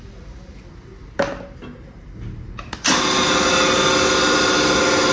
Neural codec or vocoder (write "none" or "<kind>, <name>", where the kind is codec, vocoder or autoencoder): none